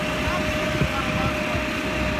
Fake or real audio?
real